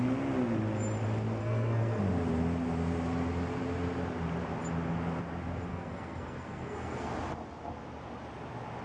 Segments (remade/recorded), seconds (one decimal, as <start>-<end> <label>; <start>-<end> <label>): 0.0-1.4 recorded; 1.4-2.0 remade; 2.0-5.7 recorded; 5.7-7.1 remade; 7.1-8.8 recorded